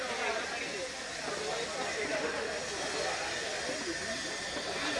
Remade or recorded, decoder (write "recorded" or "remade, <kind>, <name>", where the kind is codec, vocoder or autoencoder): recorded